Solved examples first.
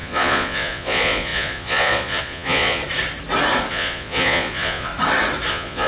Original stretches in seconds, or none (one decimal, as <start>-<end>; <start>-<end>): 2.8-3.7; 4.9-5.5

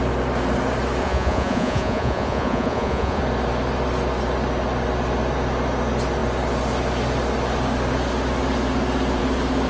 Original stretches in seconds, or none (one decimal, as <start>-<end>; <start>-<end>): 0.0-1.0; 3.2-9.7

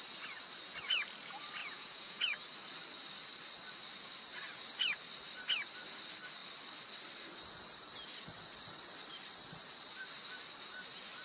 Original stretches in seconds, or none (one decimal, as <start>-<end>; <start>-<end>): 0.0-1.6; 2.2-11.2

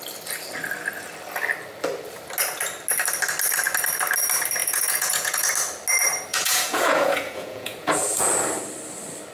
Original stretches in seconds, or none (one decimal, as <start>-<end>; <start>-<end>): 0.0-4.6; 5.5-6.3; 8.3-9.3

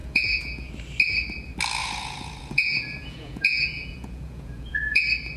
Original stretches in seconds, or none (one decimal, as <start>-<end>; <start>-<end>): 0.7-1.8; 5.0-5.4